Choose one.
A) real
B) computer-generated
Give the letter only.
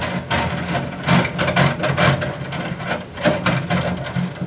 A